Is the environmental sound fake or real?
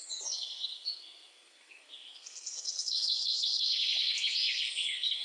fake